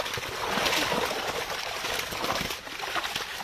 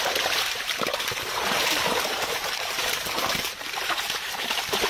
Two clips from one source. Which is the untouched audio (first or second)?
first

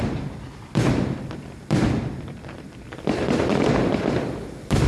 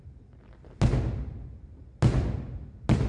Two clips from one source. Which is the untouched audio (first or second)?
second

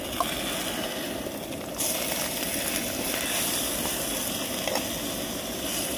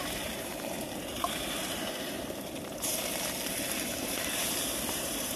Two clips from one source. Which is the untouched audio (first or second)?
first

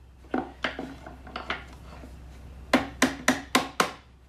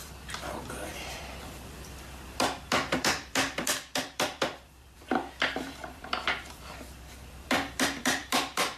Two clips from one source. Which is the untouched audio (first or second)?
first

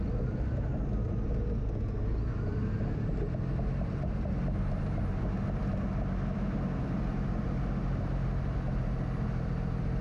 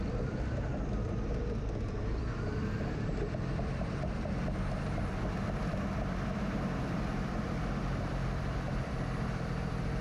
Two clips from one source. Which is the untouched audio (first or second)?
first